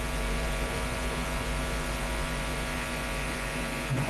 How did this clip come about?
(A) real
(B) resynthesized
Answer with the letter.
B